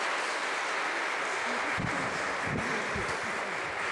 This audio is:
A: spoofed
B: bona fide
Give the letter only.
B